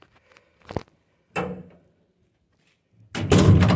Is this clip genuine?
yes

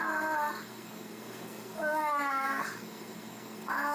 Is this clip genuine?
no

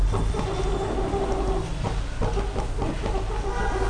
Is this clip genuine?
yes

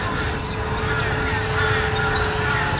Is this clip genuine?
yes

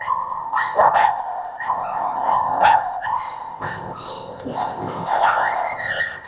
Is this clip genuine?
no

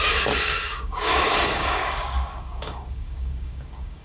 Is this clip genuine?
no